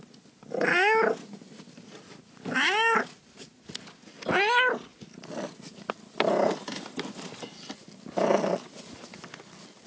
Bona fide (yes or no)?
yes